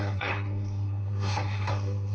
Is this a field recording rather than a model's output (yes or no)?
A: no